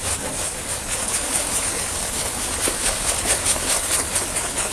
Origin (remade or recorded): remade